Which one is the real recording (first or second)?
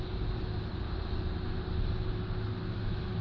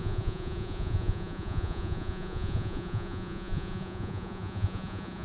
first